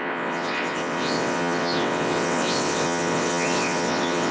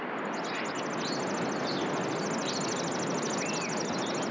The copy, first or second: first